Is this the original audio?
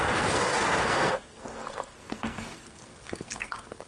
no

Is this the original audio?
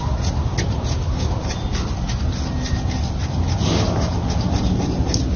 yes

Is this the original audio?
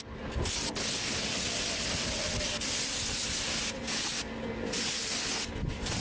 yes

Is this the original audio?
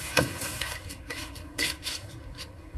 no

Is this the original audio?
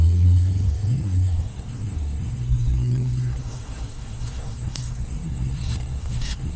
no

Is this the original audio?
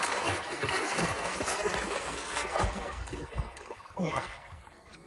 no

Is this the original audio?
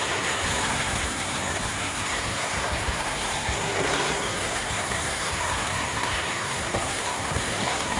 no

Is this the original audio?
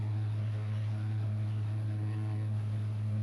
no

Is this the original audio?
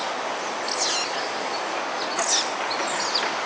yes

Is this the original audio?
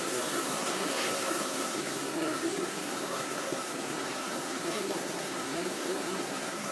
no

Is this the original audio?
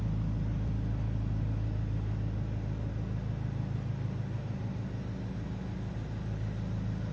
yes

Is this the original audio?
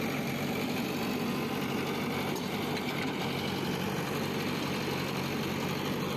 yes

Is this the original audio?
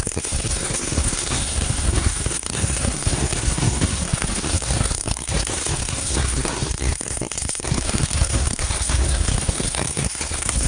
no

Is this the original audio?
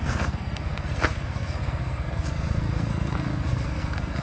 no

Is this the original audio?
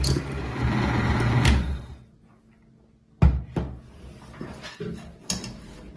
yes